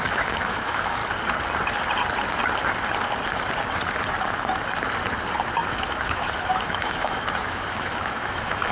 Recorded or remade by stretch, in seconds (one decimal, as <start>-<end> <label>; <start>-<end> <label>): 0.0-1.0 remade; 1.0-5.7 recorded; 5.7-8.7 remade